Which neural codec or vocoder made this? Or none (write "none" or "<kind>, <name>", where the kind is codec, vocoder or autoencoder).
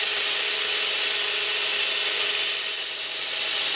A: none